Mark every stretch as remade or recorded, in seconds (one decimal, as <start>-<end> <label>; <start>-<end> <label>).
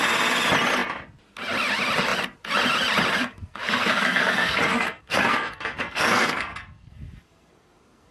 0.0-3.2 recorded; 3.2-8.1 remade